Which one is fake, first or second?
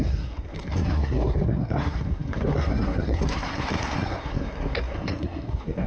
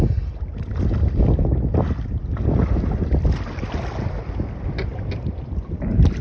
first